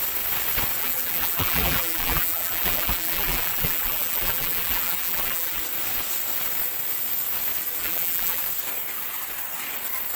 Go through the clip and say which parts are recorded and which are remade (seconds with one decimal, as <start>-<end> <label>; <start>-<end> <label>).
0.0-0.8 recorded; 0.8-5.6 remade; 5.6-7.8 recorded; 7.8-8.4 remade; 8.4-10.2 recorded